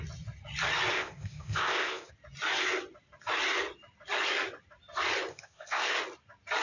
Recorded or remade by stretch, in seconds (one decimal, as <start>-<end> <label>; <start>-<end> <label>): 0.0-0.9 recorded; 0.9-2.1 remade; 2.1-5.3 recorded; 5.3-5.9 remade; 5.9-6.6 recorded

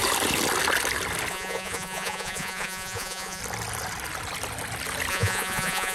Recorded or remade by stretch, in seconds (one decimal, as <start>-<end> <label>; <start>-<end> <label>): 0.0-1.3 recorded; 1.3-3.4 remade; 3.4-5.1 recorded; 5.1-5.9 remade

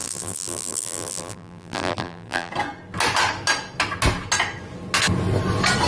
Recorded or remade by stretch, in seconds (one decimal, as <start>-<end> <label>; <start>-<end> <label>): 0.0-2.5 remade; 2.5-5.9 recorded

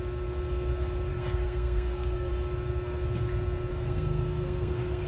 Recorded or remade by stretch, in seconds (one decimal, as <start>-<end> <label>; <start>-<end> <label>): 0.0-1.1 recorded; 1.1-2.3 remade; 2.3-3.7 recorded; 3.7-5.1 remade